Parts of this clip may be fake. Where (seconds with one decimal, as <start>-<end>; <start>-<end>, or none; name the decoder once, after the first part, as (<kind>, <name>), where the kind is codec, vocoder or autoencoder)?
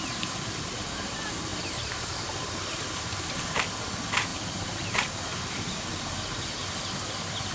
1.5-3.6 (vocoder, BigVGAN v2); 4.3-5.9